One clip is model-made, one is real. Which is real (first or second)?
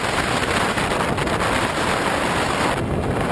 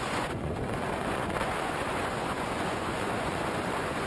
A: first